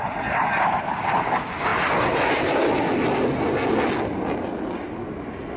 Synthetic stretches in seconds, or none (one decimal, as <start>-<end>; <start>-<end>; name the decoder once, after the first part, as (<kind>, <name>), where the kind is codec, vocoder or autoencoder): none